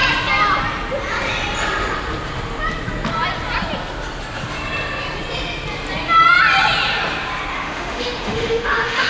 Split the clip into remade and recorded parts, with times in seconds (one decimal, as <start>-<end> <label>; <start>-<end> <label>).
0.0-7.5 recorded; 7.5-9.1 remade